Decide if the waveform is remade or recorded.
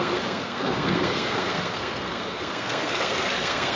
remade